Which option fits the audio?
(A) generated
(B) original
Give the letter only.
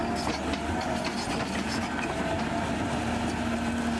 B